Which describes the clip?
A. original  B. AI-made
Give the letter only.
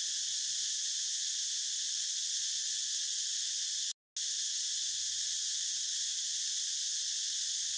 A